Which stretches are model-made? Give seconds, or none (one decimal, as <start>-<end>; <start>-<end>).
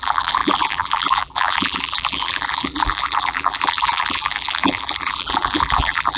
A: 0.0-6.2